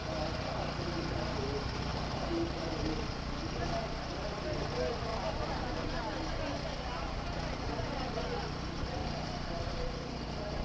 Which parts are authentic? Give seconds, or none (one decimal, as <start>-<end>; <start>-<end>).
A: 0.0-1.9; 2.7-5.1; 6.3-9.0; 10.0-10.6